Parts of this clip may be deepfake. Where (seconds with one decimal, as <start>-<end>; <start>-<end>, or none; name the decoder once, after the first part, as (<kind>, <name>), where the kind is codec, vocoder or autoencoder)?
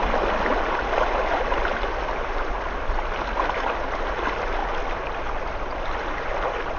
none